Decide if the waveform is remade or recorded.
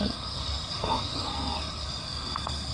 remade